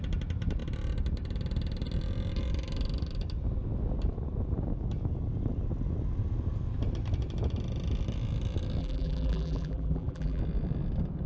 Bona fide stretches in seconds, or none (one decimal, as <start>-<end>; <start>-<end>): 0.0-8.8; 10.4-11.3